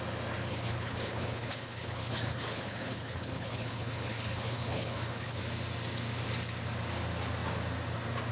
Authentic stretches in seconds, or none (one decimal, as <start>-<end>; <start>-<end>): 0.0-0.5; 5.4-8.3

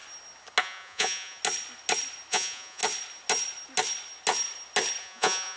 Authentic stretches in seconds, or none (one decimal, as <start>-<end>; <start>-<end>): 0.0-0.6; 1.4-2.3; 2.8-5.0

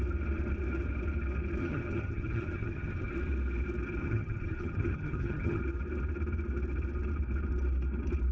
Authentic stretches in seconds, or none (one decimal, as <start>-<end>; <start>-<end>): 0.0-1.6; 3.1-4.0; 5.6-8.3

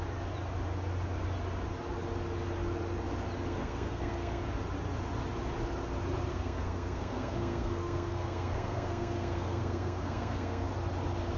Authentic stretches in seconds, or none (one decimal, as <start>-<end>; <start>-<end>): 0.0-3.5; 4.4-6.3; 10.7-11.4

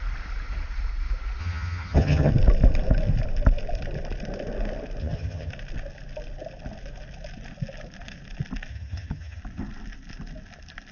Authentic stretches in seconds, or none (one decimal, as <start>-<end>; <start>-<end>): 0.0-1.4; 2.3-5.0; 5.5-8.7; 9.4-10.9

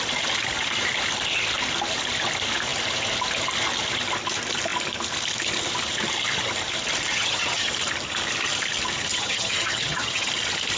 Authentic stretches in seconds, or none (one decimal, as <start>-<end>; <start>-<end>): 0.0-7.1; 7.7-9.1; 10.3-10.8

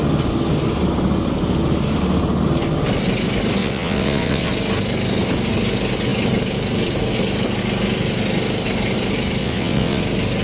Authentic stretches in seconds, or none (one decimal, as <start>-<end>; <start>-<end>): 0.0-3.6; 4.5-9.4; 10.0-10.4

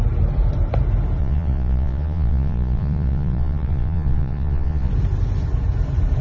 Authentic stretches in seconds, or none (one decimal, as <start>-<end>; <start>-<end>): 0.0-1.2; 4.9-6.2